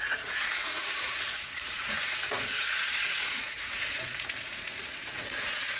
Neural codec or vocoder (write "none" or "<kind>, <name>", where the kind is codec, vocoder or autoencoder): vocoder, Vocos